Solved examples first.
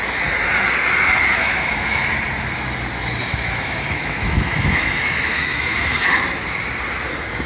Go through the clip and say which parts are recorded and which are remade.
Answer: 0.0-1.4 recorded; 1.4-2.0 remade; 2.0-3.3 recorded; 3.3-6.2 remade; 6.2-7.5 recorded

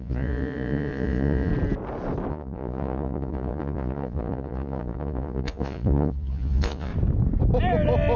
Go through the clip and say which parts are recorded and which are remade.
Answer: 0.0-1.5 remade; 1.5-2.3 recorded; 2.3-6.9 remade; 6.9-8.2 recorded

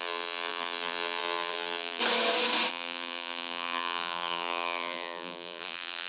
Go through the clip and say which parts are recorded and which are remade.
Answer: 0.0-2.0 remade; 2.0-2.7 recorded; 2.7-6.1 remade

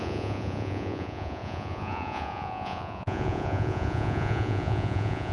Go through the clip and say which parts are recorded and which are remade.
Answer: 0.0-5.3 remade

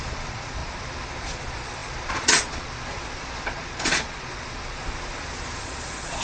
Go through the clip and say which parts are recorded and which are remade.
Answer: 0.0-0.6 remade; 0.6-1.2 recorded; 1.2-4.8 remade; 4.8-5.6 recorded; 5.6-6.2 remade

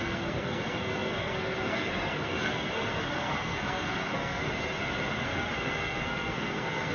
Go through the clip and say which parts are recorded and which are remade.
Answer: 0.0-4.4 remade; 4.4-5.2 recorded; 5.2-6.9 remade

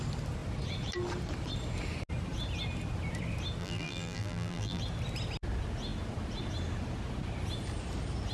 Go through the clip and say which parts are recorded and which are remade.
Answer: 0.0-3.6 recorded; 3.6-4.8 remade; 4.8-8.3 recorded